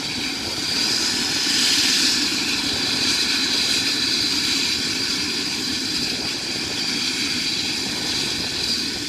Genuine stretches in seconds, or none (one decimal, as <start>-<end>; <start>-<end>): 0.0-2.3; 7.5-9.1